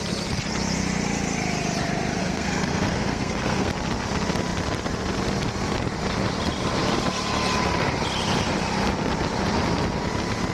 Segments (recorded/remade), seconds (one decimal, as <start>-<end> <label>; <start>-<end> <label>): 0.0-2.2 recorded; 2.2-3.7 remade; 3.7-10.5 recorded